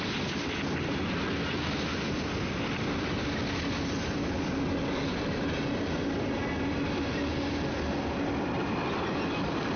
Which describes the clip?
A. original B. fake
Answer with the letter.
A